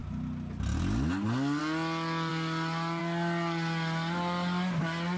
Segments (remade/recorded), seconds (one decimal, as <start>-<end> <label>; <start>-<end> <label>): 0.0-5.2 recorded